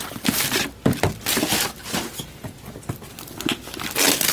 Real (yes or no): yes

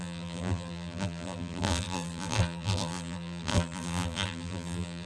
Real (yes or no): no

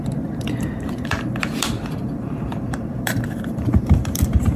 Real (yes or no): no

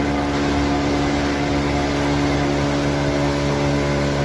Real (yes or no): yes